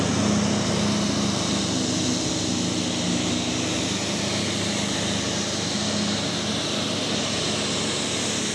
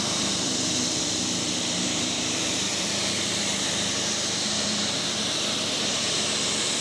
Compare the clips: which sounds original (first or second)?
first